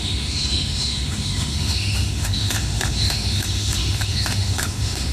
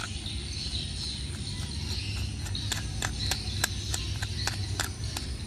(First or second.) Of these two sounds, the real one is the second